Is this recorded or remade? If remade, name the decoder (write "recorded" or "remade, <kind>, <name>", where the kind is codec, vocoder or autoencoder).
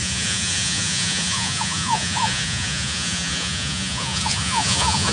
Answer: remade, vocoder, Vocos